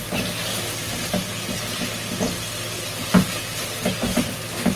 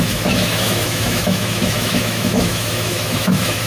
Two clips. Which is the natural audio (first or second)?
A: first